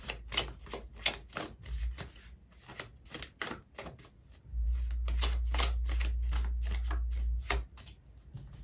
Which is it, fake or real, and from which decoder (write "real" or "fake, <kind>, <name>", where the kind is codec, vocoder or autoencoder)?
real